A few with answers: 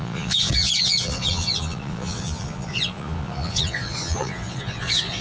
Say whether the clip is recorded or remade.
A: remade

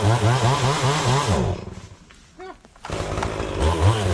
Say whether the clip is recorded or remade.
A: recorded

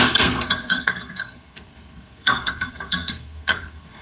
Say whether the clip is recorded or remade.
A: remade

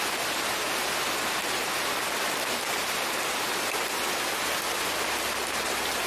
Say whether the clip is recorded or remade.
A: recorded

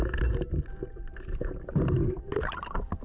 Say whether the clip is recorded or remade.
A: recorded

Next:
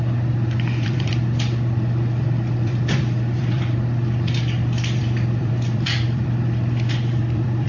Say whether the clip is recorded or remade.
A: remade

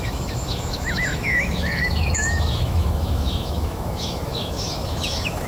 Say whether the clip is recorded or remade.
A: remade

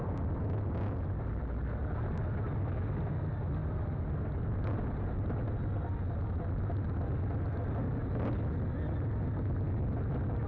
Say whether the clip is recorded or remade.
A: recorded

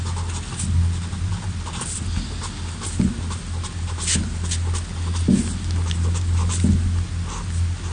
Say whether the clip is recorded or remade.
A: recorded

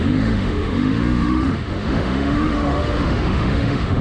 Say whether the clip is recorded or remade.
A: remade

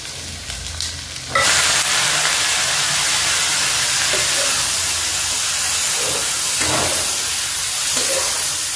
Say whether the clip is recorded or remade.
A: recorded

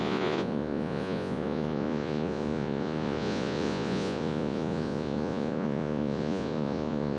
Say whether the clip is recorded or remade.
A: remade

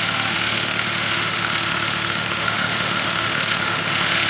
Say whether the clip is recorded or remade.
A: remade